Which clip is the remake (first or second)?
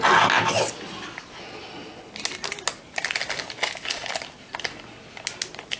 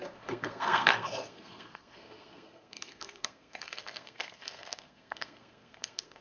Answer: second